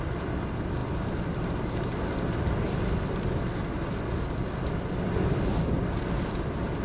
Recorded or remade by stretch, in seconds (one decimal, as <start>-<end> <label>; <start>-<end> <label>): 0.0-6.8 recorded